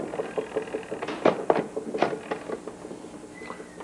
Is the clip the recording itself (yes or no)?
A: yes